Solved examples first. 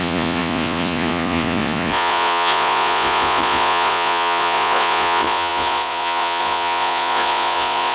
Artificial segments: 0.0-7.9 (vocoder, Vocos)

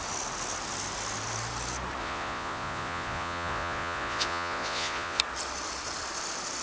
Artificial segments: 2.0-5.2 (vocoder, Vocos)

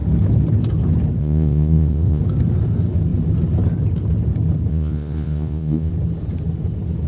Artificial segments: 1.2-2.2 (vocoder, Vocos); 4.7-5.9

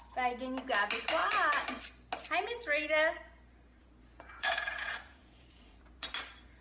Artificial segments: 3.8-6.1 (vocoder, Vocos)

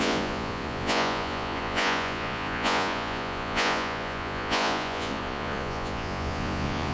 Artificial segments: 0.0-6.9 (vocoder, Vocos)

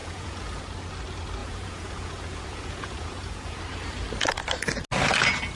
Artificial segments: 0.0-0.6 (vocoder, Vocos); 1.4-3.6

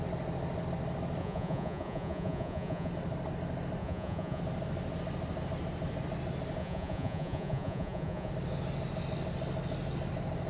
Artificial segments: 1.2-2.9 (vocoder, Vocos); 3.8-4.4; 6.6-8.3

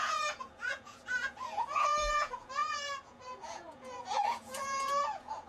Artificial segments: 0.0-5.5 (vocoder, Vocos)